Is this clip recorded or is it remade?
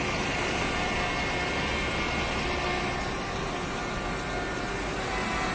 recorded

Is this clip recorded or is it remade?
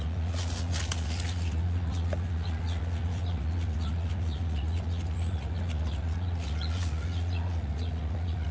remade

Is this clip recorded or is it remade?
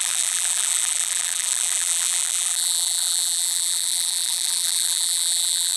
remade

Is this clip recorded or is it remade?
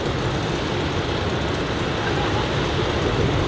recorded